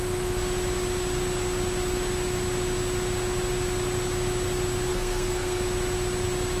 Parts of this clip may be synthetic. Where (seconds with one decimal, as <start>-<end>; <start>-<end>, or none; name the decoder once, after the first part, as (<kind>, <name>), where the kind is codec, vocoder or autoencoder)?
4.9-5.6 (codec, SNAC)

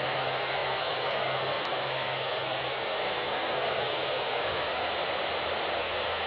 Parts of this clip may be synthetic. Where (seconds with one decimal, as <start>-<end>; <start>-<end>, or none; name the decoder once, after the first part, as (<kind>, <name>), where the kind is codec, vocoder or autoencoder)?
0.0-4.9 (codec, SNAC); 5.8-6.3

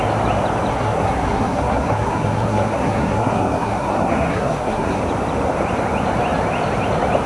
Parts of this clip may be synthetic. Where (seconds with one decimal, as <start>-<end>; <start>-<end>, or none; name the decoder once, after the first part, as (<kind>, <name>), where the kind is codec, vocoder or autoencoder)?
0.7-5.0 (codec, SNAC)

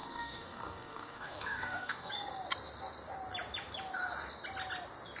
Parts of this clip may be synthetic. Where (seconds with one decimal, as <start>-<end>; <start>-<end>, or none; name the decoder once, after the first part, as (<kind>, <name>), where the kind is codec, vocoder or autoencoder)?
0.0-2.1 (codec, SNAC)

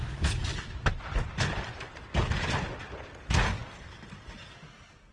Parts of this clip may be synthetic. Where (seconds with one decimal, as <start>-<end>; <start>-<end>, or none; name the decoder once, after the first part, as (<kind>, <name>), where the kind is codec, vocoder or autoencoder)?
none

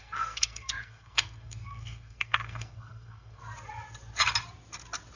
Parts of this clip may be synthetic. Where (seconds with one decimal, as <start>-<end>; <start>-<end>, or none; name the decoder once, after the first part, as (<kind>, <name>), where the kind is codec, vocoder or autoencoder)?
0.0-3.4 (codec, SNAC)

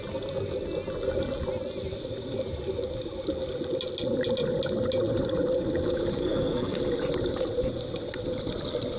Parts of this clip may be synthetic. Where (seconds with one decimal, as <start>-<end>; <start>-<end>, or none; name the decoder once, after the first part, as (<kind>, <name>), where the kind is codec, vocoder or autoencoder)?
6.2-6.8 (codec, SNAC)